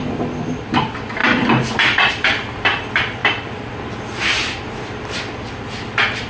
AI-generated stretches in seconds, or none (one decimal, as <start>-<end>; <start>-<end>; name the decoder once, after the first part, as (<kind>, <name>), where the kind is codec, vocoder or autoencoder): none